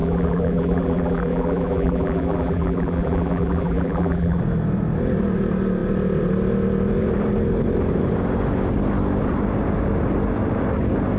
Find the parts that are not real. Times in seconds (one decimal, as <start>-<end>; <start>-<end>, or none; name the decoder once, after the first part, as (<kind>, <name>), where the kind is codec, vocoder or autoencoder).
0.0-4.4 (vocoder, BigVGAN v2)